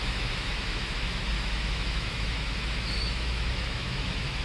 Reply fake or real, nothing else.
fake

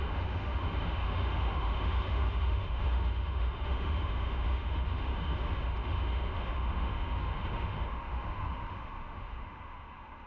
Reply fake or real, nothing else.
fake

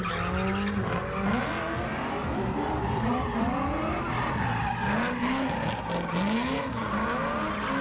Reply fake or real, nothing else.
real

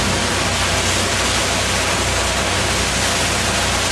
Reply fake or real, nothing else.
real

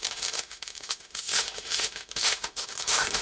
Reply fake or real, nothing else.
fake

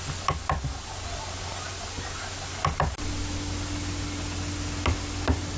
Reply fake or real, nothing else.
real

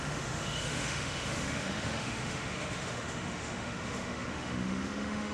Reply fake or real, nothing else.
fake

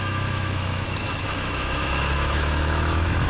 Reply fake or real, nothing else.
fake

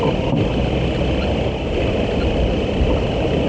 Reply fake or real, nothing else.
real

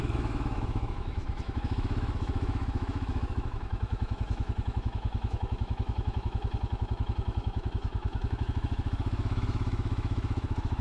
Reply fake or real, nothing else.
fake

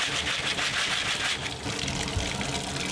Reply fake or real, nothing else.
real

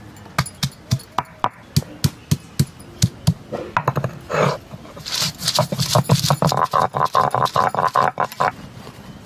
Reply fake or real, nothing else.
real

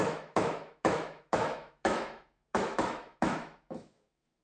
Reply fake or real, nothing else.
fake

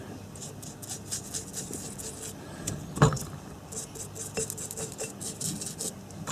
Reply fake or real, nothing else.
real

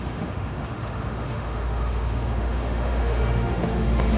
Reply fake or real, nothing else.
fake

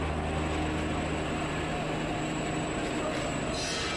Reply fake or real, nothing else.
real